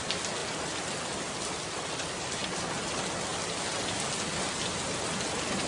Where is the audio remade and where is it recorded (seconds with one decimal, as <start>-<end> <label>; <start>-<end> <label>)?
0.0-5.7 recorded